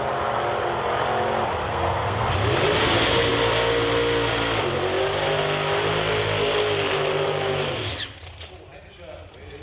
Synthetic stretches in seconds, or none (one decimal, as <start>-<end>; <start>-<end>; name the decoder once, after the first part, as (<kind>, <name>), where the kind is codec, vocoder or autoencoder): 1.7-2.3 (codec, SNAC)